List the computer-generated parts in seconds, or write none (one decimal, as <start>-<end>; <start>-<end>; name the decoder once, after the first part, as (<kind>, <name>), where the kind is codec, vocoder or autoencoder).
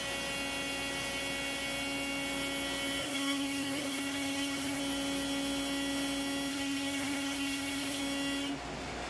3.0-4.8 (codec, SNAC); 6.5-8.0